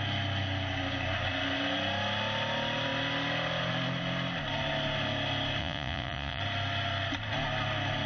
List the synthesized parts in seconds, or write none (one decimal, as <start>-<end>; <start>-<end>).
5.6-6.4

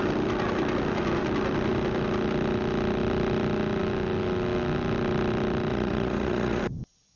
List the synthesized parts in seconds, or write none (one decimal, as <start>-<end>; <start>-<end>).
5.7-6.6

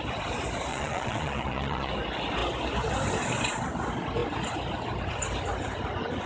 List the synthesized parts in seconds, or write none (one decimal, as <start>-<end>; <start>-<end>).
0.7-1.9